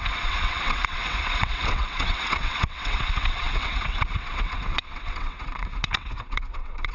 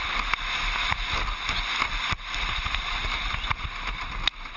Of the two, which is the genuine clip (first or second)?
second